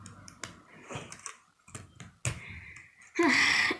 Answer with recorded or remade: recorded